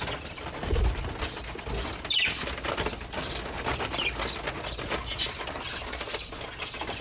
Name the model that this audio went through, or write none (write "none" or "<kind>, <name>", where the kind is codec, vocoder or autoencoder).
none